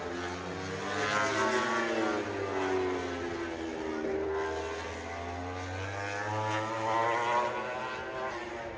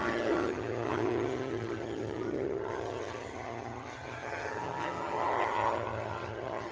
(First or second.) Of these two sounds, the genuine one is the first